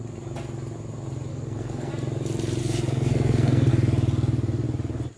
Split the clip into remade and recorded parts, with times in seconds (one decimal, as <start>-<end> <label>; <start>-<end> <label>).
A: 0.0-1.3 recorded; 1.3-1.9 remade; 1.9-2.6 recorded; 2.6-3.7 remade; 3.7-5.2 recorded